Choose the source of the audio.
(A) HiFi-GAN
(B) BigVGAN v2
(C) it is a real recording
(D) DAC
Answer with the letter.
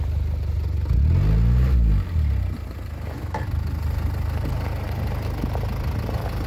C